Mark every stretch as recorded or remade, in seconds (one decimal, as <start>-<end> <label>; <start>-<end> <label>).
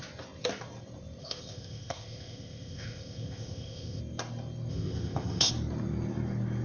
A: 0.0-1.2 recorded; 1.2-4.0 remade; 4.0-4.7 recorded; 4.7-5.5 remade; 5.5-6.6 recorded